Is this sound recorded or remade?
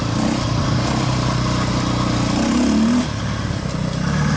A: recorded